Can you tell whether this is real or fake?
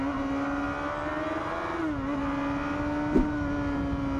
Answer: real